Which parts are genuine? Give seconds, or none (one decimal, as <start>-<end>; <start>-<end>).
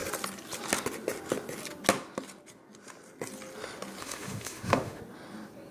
0.0-4.0; 5.0-5.7